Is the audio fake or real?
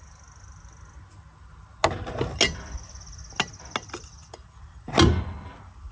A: real